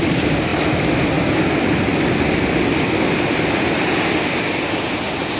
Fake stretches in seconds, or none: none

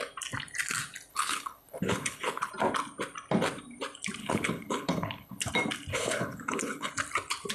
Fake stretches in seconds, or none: 1.1-2.5 (codec, HILCodec); 4.2-5.5; 5.9-6.9

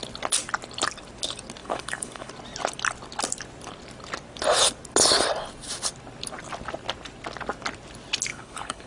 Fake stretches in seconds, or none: 1.6-2.3 (codec, HILCodec); 8.3-8.9

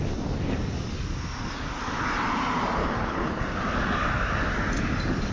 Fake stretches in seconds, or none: 2.8-3.4 (codec, HILCodec)